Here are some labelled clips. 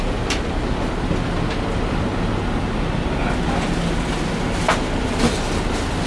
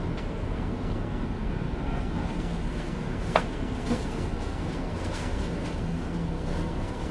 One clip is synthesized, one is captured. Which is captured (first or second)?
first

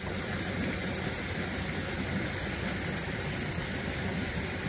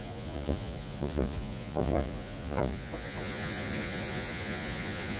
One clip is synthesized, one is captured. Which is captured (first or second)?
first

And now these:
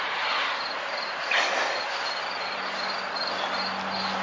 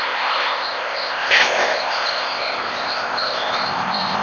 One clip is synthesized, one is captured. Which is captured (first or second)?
first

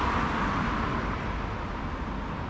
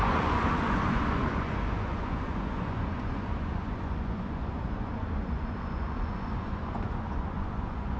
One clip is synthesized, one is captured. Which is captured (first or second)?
first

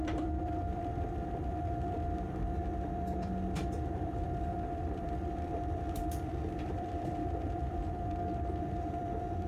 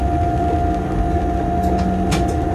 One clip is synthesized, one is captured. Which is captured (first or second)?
second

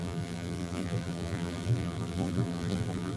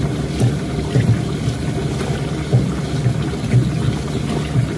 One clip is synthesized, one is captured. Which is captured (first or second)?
second